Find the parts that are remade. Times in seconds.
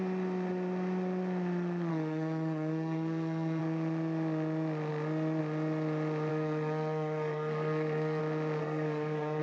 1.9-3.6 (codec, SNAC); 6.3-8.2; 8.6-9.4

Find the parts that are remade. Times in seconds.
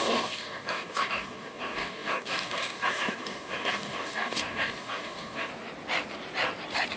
0.0-5.5 (codec, DAC)